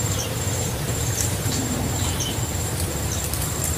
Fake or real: fake